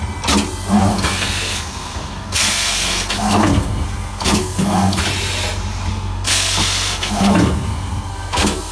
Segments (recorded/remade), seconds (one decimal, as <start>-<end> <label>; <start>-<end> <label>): 0.0-0.9 recorded; 0.9-5.0 remade; 5.0-5.9 recorded; 5.9-8.7 remade